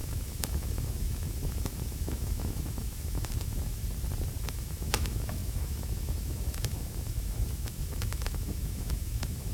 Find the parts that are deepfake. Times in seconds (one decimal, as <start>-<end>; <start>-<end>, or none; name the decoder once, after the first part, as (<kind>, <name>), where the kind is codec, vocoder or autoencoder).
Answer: 0.0-3.8 (autoencoder, DAC-VAE); 4.4-9.5